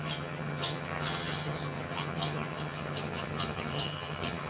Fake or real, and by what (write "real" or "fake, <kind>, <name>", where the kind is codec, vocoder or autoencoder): fake, vocoder, HiFi-GAN